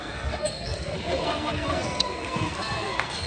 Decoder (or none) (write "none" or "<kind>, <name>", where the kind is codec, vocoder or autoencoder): codec, SNAC